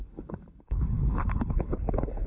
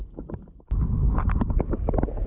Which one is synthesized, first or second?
first